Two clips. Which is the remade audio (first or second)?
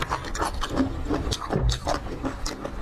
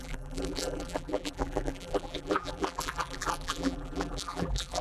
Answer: second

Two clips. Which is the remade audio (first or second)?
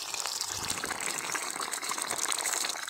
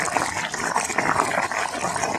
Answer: first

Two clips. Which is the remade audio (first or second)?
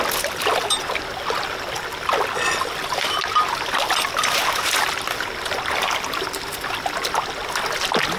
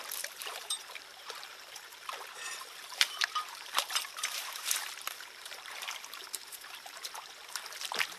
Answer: second